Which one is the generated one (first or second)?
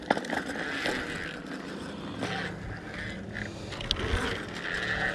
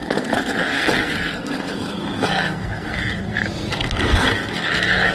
second